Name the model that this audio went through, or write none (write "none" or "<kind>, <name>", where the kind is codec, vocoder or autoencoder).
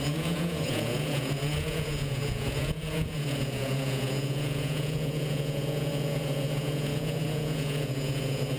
vocoder, Vocos